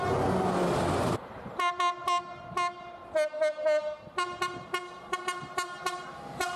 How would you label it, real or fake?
real